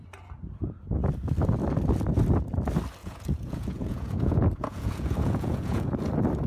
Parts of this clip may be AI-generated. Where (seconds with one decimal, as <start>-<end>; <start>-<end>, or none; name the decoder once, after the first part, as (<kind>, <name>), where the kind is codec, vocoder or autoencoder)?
3.0-6.1 (vocoder, Vocos)